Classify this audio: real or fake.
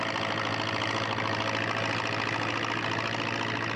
real